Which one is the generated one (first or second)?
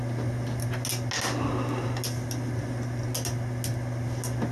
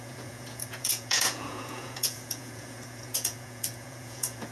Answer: second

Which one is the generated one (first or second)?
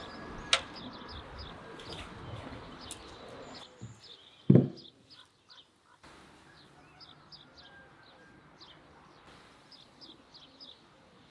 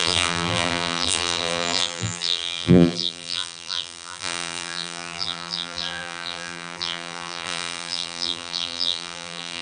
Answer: second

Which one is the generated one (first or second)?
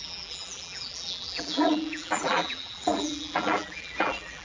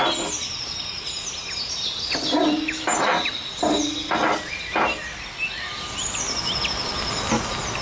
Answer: first